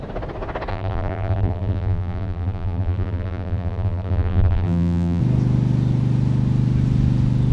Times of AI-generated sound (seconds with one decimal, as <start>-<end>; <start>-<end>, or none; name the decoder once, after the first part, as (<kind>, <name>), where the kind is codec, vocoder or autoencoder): 0.7-5.2 (vocoder, BigVGAN v2)